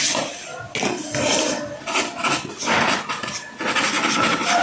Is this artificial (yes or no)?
no